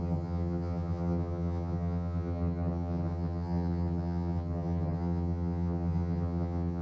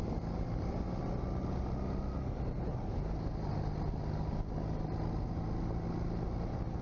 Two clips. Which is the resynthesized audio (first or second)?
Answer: first